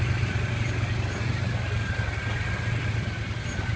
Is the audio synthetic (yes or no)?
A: no